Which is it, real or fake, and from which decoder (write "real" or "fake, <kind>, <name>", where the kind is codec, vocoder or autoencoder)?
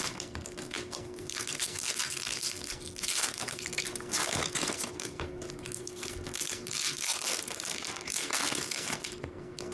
fake, codec, SNAC